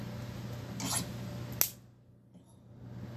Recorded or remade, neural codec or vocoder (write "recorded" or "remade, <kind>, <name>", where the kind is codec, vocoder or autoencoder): recorded